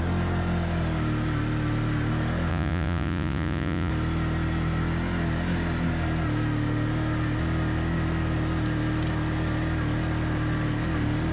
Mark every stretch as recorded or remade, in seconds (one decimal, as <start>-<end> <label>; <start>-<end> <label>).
0.0-2.5 recorded; 2.5-3.9 remade; 3.9-11.3 recorded